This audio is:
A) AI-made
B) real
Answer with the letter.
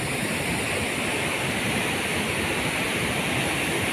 A